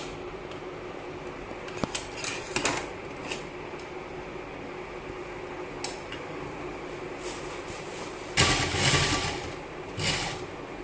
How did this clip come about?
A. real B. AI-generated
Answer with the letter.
A